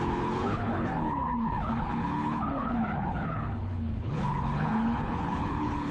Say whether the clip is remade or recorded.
remade